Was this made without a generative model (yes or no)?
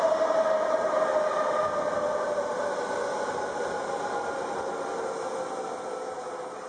yes